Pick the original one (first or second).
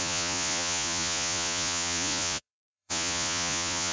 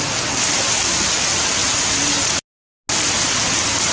second